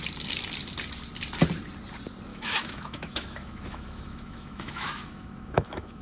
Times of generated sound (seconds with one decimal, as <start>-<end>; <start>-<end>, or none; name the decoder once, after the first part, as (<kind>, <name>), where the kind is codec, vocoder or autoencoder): 2.3-6.0 (autoencoder, DAC-VAE)